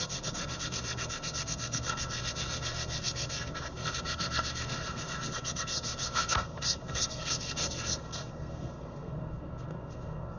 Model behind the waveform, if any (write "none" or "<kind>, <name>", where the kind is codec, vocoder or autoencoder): codec, SNAC